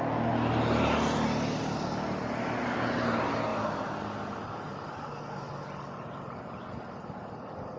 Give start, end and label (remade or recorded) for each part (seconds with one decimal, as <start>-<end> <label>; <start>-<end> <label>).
0.0-7.8 recorded